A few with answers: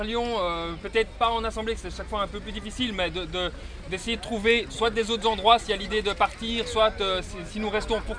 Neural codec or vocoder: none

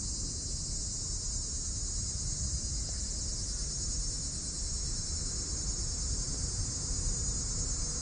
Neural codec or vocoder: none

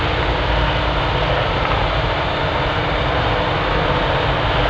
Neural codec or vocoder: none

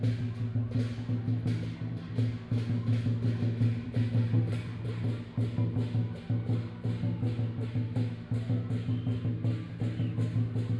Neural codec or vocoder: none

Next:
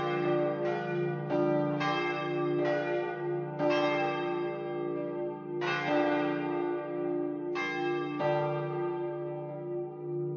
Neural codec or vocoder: none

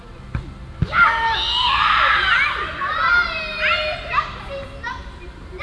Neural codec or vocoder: vocoder, BigVGAN v2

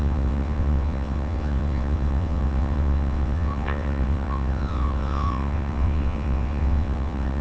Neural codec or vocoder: vocoder, WaveNeXt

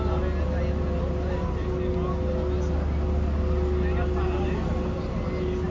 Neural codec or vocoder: none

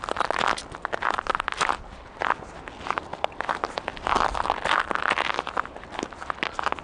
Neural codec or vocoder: none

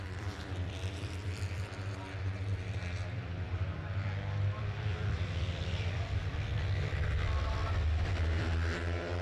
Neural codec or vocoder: vocoder, BigVGAN v2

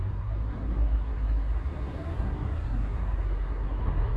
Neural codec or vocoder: codec, SNAC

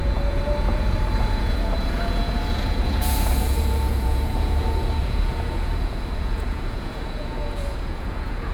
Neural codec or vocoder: vocoder, Vocos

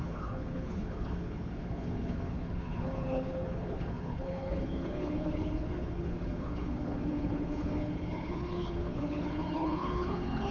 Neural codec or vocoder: codec, HILCodec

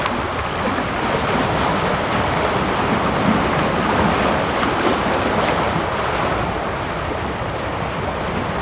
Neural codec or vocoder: none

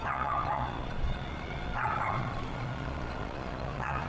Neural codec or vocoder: vocoder, Vocos